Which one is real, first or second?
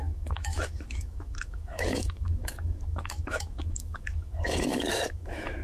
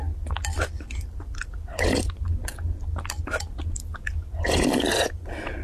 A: second